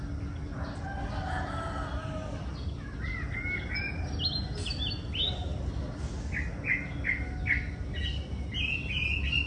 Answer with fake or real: real